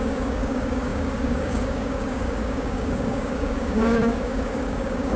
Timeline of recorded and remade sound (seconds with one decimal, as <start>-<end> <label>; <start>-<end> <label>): 0.0-5.2 remade